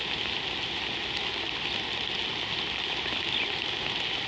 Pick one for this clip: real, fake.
real